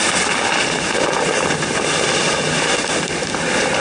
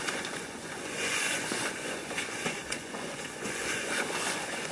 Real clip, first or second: first